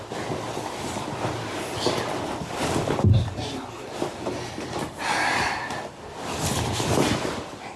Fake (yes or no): no